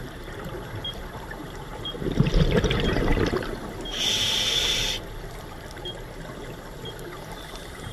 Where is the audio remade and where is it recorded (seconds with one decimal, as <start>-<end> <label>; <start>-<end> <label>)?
0.0-1.7 remade; 1.7-2.3 recorded; 2.3-3.1 remade; 3.1-7.5 recorded; 7.5-7.9 remade